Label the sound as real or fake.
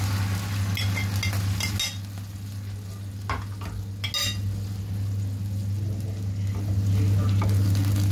real